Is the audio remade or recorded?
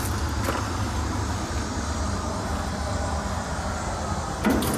recorded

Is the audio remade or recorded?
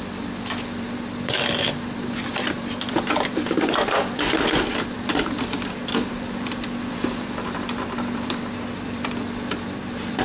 remade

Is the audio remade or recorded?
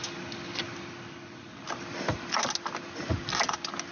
recorded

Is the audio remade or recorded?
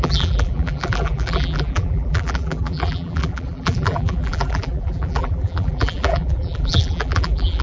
remade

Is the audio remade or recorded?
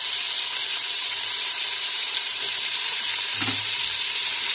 remade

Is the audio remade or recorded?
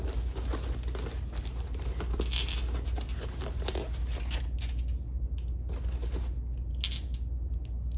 recorded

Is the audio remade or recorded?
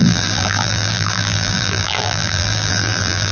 remade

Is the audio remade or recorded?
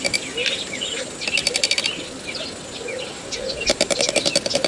recorded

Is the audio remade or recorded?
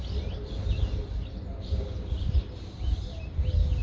recorded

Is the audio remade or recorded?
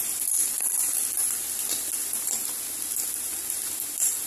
recorded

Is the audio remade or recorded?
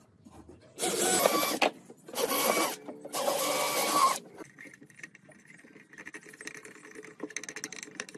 recorded